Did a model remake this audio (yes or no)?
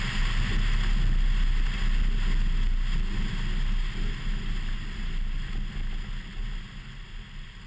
no